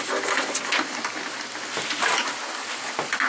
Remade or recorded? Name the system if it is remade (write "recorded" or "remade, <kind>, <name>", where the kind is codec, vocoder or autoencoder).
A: recorded